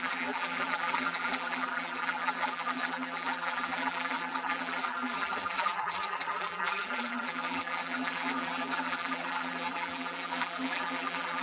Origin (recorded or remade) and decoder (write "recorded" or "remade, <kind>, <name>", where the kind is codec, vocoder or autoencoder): remade, vocoder, BigVGAN v2